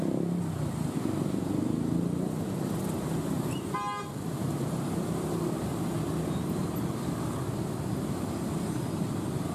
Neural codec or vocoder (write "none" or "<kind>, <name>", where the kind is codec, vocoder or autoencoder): none